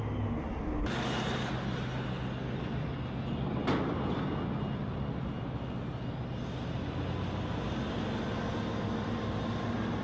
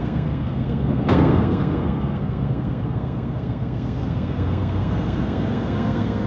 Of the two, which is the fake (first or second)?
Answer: second